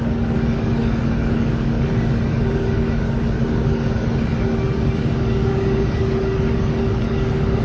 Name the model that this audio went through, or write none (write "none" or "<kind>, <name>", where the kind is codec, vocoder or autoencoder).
codec, DAC